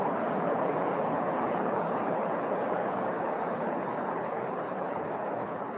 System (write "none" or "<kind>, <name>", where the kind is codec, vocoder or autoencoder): codec, HILCodec